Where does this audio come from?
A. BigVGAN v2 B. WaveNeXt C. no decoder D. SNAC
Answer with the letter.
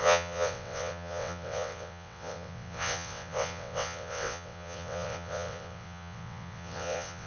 B